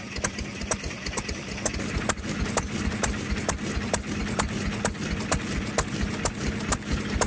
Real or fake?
real